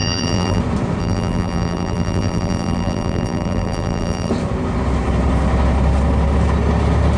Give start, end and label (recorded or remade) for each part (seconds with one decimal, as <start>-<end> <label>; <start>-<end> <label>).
0.0-0.6 remade; 0.6-1.0 recorded; 1.0-4.3 remade; 4.3-7.2 recorded